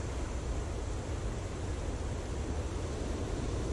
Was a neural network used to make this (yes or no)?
no